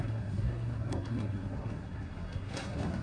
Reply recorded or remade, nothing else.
remade